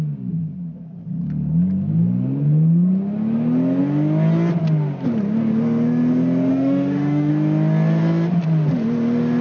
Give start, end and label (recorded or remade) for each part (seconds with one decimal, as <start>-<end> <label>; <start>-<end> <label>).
0.0-6.5 recorded; 6.5-7.3 remade; 7.3-9.4 recorded